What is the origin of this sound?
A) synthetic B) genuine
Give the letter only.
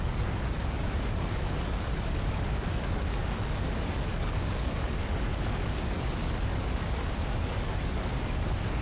A